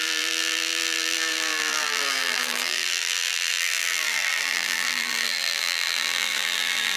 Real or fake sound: fake